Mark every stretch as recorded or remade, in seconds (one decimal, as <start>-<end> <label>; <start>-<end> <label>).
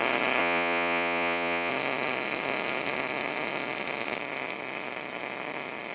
0.0-0.4 recorded; 0.4-1.7 remade; 1.7-5.9 recorded